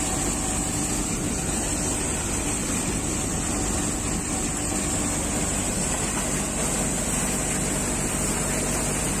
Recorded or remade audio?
recorded